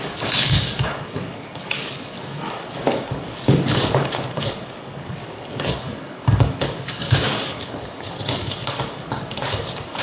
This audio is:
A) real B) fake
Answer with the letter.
B